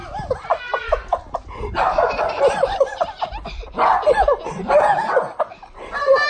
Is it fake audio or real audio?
real